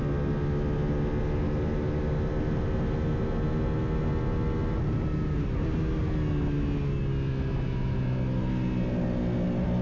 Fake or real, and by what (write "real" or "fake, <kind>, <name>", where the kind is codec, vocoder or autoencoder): real